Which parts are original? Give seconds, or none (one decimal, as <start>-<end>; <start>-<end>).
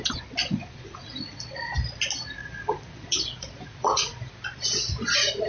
0.0-0.4; 1.8-2.4; 4.3-5.5